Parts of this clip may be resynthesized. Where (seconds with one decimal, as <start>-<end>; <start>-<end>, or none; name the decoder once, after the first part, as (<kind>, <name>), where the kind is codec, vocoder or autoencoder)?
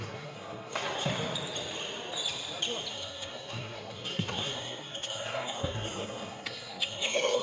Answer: 0.0-1.1 (codec, SNAC); 2.9-7.4